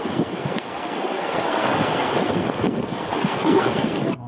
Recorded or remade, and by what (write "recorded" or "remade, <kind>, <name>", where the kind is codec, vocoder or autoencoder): remade, codec, SNAC